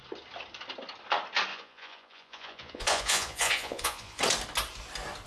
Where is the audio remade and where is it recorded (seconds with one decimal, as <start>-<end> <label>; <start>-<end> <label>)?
0.0-1.5 recorded; 1.5-4.2 remade; 4.2-5.3 recorded